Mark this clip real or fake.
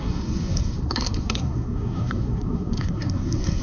fake